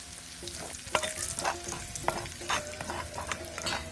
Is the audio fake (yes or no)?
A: no